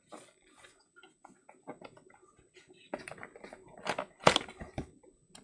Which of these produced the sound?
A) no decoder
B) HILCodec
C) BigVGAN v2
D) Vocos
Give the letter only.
A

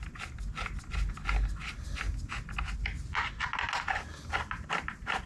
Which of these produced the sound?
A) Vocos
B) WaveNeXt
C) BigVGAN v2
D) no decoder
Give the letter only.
D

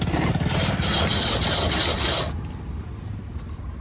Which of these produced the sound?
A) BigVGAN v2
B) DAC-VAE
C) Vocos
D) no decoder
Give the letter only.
D